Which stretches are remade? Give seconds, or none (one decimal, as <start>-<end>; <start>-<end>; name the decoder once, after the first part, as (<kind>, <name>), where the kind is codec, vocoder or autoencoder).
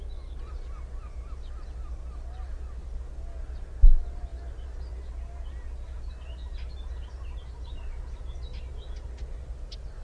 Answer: none